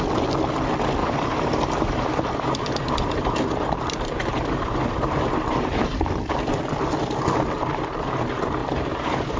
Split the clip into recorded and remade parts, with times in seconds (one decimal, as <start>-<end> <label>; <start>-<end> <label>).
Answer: 0.0-1.0 recorded; 1.0-6.1 remade; 6.1-8.6 recorded; 8.6-9.4 remade